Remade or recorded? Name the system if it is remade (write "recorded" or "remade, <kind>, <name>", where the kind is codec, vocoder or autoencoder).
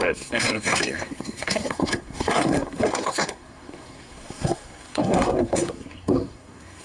remade, codec, SNAC